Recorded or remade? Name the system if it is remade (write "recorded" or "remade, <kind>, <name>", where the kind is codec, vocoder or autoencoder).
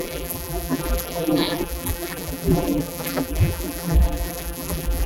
remade, vocoder, BigVGAN v2